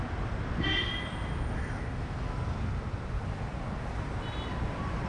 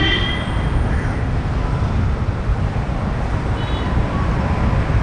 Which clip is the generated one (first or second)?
second